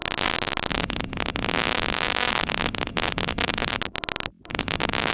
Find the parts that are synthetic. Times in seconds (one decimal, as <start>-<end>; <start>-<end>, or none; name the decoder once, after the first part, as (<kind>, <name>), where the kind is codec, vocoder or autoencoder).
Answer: 0.7-3.8 (codec, DAC); 4.5-5.1